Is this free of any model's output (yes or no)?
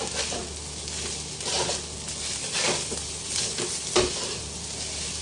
yes